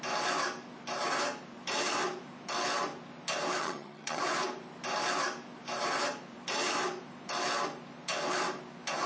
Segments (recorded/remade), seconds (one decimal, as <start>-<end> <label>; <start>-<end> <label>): 0.0-3.6 recorded; 3.6-4.2 remade; 4.2-9.1 recorded